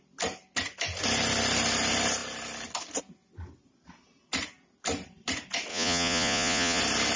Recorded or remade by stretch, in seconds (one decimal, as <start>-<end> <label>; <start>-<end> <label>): 0.0-5.7 recorded; 5.7-6.8 remade; 6.8-7.2 recorded